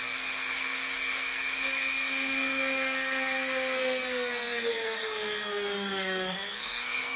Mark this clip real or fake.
fake